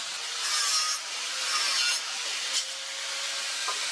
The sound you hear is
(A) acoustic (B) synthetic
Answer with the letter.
A